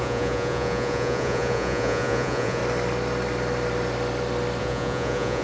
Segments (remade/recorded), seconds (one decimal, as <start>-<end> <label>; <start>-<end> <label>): 0.0-2.6 remade; 2.6-4.6 recorded; 4.6-5.4 remade